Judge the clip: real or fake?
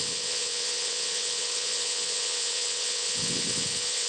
fake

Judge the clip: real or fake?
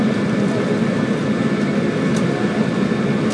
real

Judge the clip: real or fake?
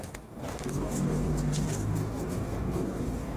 fake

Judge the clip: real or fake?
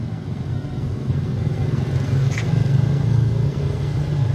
fake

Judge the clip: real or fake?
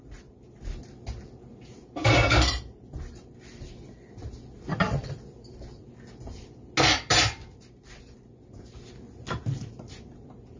real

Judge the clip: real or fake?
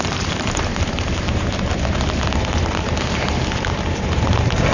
fake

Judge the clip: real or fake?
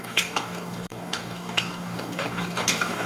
fake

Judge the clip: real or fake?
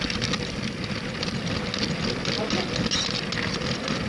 real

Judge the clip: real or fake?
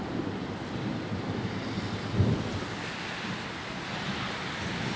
fake